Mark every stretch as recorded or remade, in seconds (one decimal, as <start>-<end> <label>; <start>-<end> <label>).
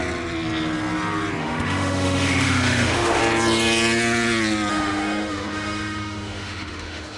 0.0-1.4 recorded; 1.4-3.2 remade; 3.2-4.7 recorded; 4.7-7.2 remade